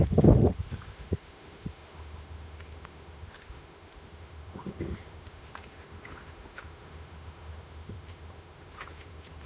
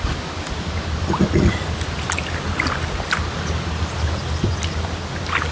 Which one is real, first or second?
second